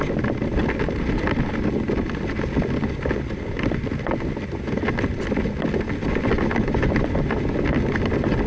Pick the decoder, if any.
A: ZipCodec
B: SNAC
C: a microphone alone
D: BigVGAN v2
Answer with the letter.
C